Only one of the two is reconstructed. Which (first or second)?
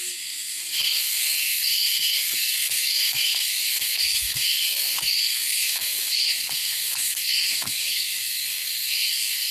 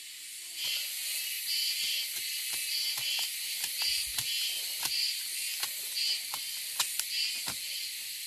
first